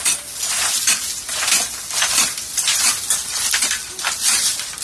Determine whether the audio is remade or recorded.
recorded